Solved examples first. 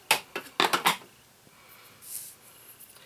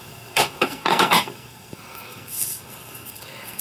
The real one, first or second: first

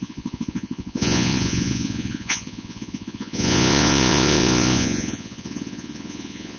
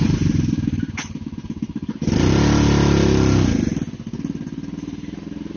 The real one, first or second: second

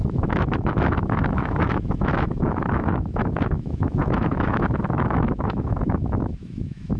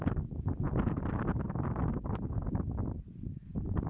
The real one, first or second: second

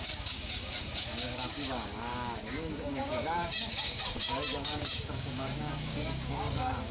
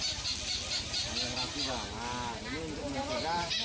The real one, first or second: second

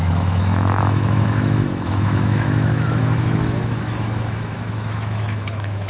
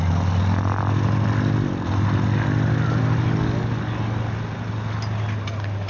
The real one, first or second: second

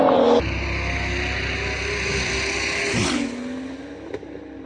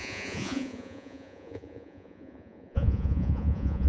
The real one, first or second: first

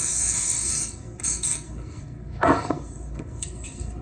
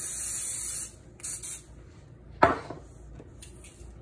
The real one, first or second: second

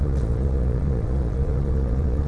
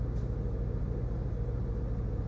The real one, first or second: second